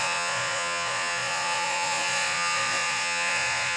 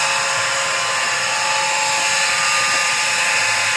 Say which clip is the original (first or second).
second